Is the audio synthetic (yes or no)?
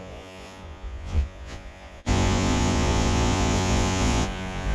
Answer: yes